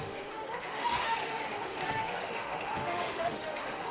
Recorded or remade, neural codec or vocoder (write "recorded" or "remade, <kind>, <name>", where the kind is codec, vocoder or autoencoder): remade, autoencoder, DAC-VAE